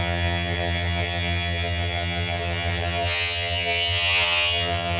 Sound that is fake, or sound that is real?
fake